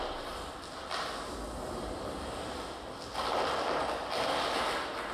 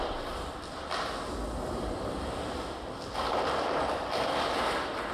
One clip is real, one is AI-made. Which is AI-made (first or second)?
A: second